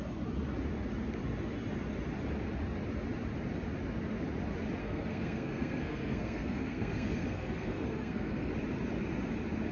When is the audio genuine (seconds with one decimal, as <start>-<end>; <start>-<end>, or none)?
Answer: 0.0-4.8; 8.5-9.7